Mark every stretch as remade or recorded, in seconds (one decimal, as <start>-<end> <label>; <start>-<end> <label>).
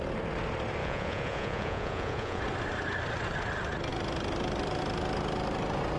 0.0-0.8 recorded; 0.8-2.4 remade; 2.4-6.0 recorded